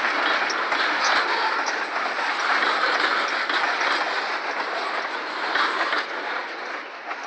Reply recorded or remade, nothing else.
recorded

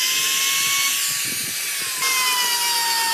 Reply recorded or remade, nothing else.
recorded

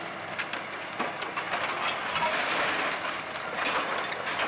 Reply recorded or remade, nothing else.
recorded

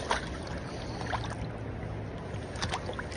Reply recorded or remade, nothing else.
recorded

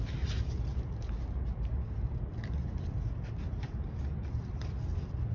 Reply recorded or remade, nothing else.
recorded